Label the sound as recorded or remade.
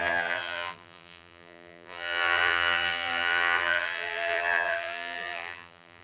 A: remade